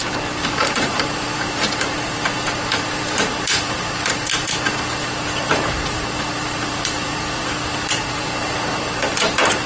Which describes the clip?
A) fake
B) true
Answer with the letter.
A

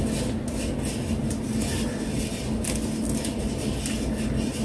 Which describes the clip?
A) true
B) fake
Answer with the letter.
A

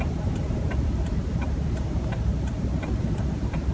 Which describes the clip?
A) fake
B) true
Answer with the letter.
A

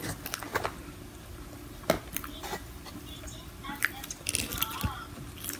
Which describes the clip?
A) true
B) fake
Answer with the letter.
A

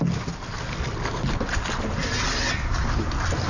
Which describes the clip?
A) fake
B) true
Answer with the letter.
B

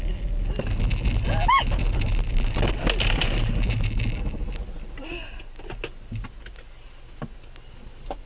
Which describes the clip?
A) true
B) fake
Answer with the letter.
A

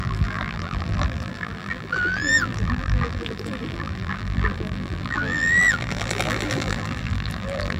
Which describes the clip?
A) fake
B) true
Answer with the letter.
A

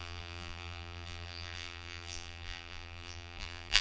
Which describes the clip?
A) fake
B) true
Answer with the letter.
A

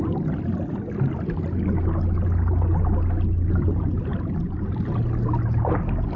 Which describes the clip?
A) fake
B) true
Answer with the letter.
B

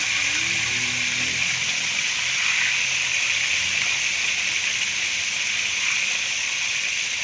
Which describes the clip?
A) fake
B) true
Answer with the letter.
B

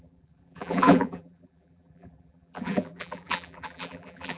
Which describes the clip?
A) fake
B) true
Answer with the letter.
A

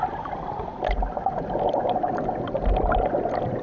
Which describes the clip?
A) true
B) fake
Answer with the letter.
A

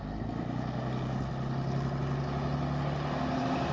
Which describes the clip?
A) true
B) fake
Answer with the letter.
A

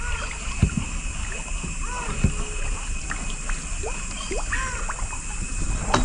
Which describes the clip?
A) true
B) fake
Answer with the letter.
A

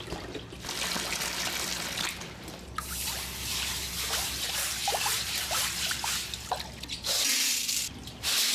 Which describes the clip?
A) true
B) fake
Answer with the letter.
A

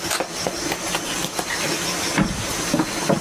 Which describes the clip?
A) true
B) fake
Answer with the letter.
A